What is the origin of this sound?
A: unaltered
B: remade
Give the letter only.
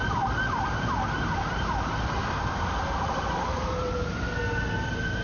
A